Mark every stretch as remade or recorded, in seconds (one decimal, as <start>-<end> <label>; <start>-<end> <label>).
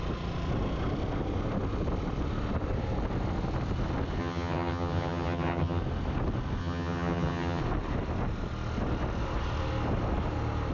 0.0-4.2 recorded; 4.2-5.8 remade; 5.8-6.6 recorded; 6.6-7.6 remade; 7.6-10.7 recorded